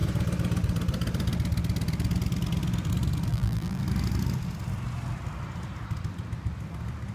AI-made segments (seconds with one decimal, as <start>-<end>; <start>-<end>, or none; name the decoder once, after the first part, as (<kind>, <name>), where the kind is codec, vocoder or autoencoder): 3.3-3.8 (vocoder, BigVGAN v2)